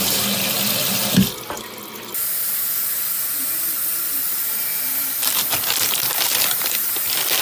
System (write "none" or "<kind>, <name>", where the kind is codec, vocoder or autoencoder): none